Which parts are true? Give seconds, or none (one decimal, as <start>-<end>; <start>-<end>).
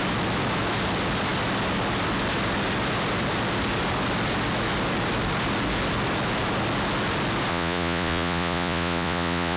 0.0-7.5